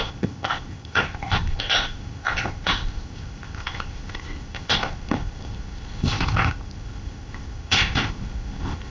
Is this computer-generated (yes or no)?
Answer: yes